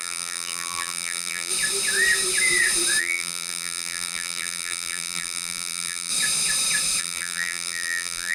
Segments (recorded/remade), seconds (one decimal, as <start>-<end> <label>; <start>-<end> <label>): 0.0-1.5 remade; 1.5-3.0 recorded; 3.0-6.1 remade; 6.1-7.0 recorded; 7.0-8.3 remade